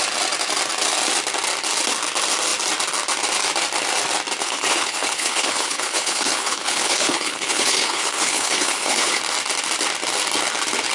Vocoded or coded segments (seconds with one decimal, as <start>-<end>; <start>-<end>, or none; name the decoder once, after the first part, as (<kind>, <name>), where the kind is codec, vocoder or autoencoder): 4.4-9.2 (codec, HILCodec)